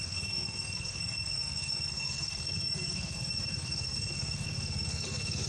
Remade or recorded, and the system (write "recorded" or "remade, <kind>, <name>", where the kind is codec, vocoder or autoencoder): remade, codec, SNAC